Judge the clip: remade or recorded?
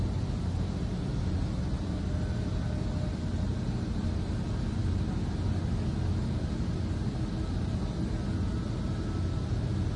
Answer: recorded